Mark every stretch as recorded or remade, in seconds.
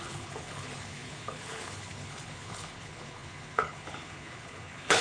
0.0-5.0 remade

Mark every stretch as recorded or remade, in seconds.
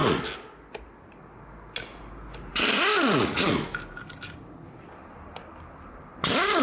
0.0-2.9 recorded; 2.9-3.5 remade; 3.5-6.6 recorded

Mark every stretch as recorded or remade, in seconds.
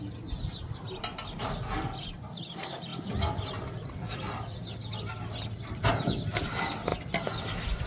0.0-2.9 remade; 2.9-5.9 recorded; 5.9-6.9 remade; 6.9-7.9 recorded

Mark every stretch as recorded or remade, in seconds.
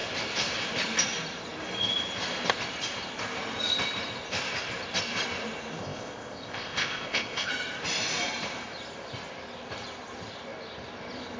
0.0-5.8 recorded; 5.8-7.5 remade; 7.5-11.4 recorded